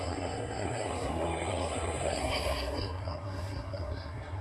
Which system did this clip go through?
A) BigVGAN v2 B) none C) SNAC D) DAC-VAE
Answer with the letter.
C